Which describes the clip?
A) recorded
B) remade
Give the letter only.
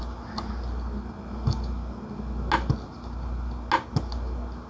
A